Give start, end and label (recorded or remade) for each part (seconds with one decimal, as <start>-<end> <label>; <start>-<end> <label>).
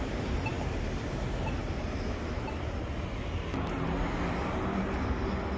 0.0-5.6 recorded